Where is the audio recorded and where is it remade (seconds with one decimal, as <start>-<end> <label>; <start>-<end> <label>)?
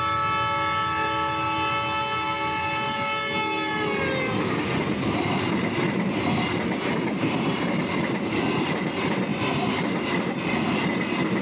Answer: 0.0-11.4 recorded